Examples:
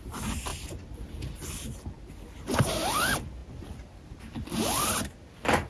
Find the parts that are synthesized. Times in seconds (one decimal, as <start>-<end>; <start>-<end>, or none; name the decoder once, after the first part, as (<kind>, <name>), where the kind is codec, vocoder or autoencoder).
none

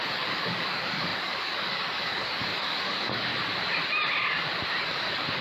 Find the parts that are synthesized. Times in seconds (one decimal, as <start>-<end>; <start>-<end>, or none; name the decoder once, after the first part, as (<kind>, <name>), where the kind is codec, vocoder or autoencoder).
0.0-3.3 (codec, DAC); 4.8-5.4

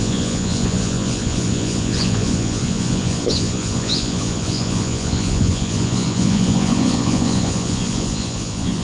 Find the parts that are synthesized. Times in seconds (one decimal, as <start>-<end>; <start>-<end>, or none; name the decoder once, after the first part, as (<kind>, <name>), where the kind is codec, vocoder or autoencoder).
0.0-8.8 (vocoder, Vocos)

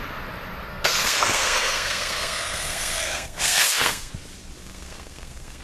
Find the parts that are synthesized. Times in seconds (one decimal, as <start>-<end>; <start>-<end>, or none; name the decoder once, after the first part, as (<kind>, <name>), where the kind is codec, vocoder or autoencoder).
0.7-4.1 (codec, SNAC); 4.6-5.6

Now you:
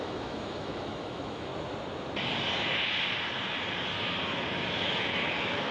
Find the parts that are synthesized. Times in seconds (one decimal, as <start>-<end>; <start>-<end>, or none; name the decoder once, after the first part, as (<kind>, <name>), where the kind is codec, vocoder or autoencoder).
0.0-1.5 (autoencoder, DAC-VAE); 4.9-5.7